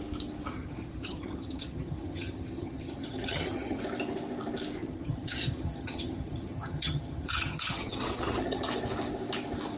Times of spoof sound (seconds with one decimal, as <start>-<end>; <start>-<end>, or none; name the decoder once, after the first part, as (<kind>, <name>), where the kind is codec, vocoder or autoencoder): 0.5-3.8 (vocoder, HiFi-GAN); 4.8-8.7